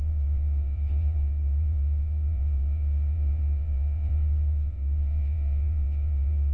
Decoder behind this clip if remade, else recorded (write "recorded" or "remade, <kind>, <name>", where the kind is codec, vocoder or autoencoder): remade, vocoder, WaveNeXt